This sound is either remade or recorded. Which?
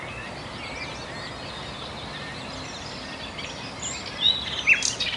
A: recorded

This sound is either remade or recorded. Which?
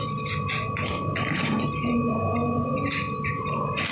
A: recorded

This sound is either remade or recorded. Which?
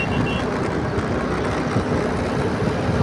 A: recorded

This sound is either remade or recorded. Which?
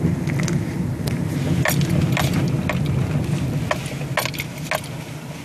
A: recorded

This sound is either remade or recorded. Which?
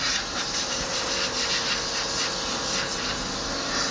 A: recorded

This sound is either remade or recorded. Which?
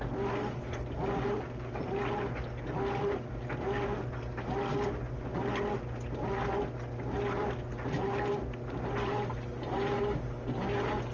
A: recorded